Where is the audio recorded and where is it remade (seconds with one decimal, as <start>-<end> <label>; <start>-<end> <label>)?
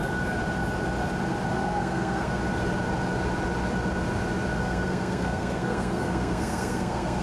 0.0-1.5 recorded; 1.5-2.4 remade; 2.4-4.6 recorded; 4.6-7.2 remade